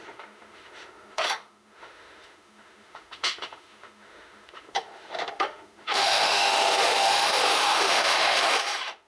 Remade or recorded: remade